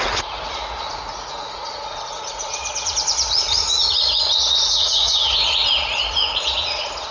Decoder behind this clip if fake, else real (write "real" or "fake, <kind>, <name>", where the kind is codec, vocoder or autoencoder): fake, vocoder, Vocos